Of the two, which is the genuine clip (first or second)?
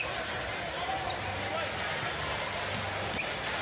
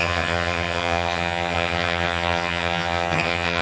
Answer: first